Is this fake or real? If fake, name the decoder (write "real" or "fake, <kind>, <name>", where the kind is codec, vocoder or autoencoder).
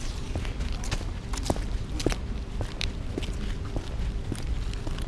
fake, vocoder, BigVGAN v2